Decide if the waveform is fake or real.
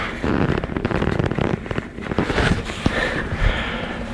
fake